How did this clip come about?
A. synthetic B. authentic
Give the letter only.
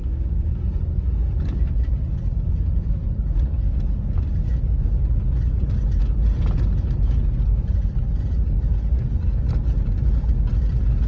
B